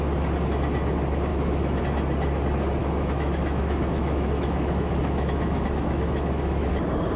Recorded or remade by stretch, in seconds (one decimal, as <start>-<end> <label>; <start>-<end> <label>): 0.0-1.3 recorded; 1.3-1.8 remade; 1.8-2.8 recorded; 2.8-6.7 remade; 6.7-7.2 recorded